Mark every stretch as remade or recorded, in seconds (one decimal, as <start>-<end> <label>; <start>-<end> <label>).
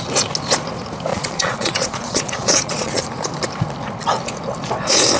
0.0-1.1 recorded; 1.1-3.0 remade; 3.0-5.2 recorded